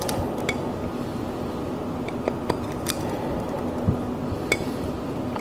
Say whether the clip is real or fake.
real